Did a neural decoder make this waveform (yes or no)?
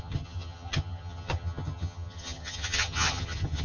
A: yes